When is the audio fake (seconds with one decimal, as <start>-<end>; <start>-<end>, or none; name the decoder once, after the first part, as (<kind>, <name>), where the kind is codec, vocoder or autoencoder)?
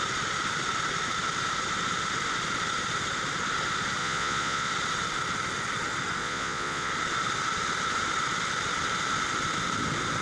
4.0-4.7 (vocoder, Vocos); 6.2-6.9